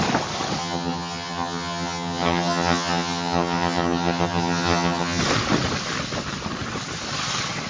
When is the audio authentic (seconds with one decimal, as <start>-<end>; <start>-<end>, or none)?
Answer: 0.0-0.6; 5.2-7.7